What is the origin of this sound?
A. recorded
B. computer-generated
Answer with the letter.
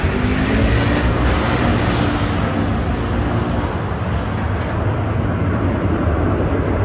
A